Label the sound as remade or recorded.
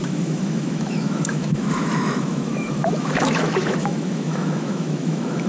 remade